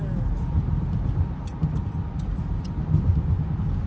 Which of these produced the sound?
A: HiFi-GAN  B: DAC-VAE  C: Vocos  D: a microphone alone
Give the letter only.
D